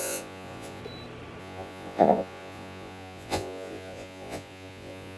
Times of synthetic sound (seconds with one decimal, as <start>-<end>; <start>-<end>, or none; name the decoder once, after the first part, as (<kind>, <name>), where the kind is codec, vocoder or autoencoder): 0.0-0.8 (vocoder, Vocos); 1.4-5.2